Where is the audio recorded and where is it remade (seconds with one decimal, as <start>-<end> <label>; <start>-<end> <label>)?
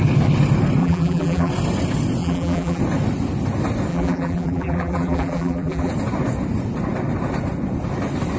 0.0-0.8 recorded; 0.8-1.5 remade; 1.5-2.2 recorded; 2.2-2.8 remade; 2.8-3.9 recorded; 3.9-5.9 remade; 5.9-8.4 recorded